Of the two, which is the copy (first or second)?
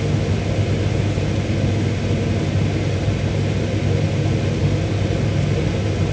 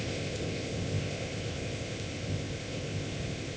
second